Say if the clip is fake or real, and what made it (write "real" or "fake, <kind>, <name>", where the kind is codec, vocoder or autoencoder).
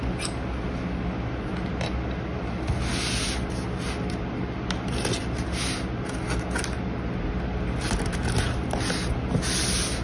real